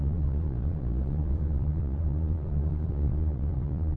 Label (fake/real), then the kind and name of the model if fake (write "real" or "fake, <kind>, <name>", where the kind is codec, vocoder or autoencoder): fake, vocoder, Vocos